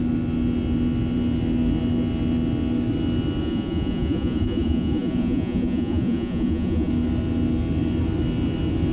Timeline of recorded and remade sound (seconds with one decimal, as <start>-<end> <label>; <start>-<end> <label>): 0.0-3.4 recorded; 3.4-6.9 remade; 6.9-8.9 recorded